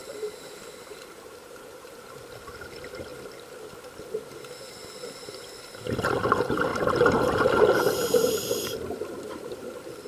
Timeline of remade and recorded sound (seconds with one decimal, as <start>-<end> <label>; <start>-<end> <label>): 0.0-3.1 remade; 3.1-6.3 recorded; 6.3-6.7 remade; 6.7-7.2 recorded; 7.2-10.1 remade